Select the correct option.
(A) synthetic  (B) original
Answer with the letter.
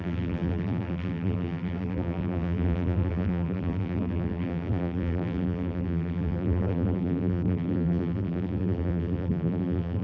A